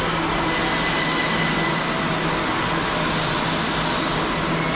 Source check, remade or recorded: recorded